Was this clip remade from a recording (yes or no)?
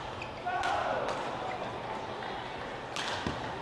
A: no